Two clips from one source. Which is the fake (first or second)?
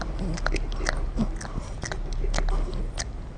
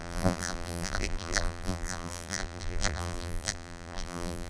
second